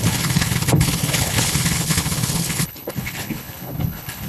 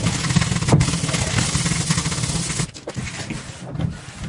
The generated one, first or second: first